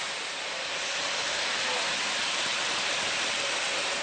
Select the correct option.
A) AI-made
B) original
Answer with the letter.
A